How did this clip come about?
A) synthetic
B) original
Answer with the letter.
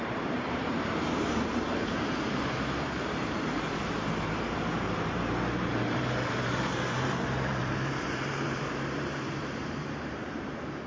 A